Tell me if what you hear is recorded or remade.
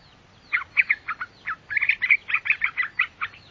recorded